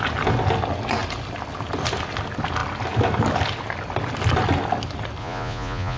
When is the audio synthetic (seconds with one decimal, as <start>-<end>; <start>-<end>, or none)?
5.2-6.0